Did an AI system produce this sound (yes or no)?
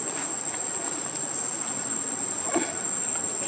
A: no